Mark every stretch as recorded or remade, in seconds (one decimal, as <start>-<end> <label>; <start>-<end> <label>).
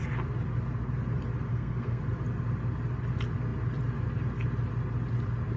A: 0.0-1.5 recorded; 1.5-2.0 remade; 2.0-5.6 recorded